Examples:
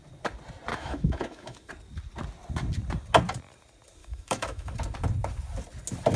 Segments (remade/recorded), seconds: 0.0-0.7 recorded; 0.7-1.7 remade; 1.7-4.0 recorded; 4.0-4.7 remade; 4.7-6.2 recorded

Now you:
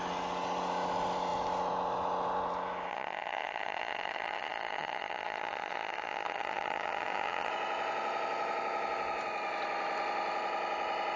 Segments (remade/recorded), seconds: 0.0-2.9 recorded; 2.9-7.5 remade; 7.5-11.2 recorded

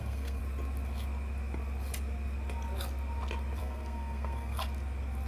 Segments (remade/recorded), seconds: 0.0-0.4 remade; 0.4-3.6 recorded; 3.6-4.6 remade; 4.6-5.3 recorded

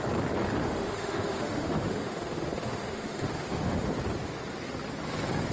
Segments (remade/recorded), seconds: 0.0-0.6 recorded; 0.6-3.9 remade; 3.9-5.5 recorded

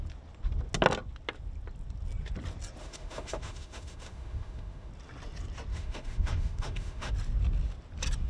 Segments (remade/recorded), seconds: 0.0-2.8 recorded; 2.8-4.9 remade; 4.9-5.7 recorded; 5.7-7.1 remade; 7.1-8.3 recorded

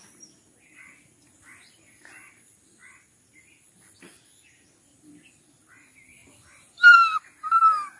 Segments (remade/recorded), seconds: 0.0-8.0 recorded